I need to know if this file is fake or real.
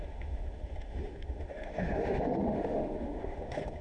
fake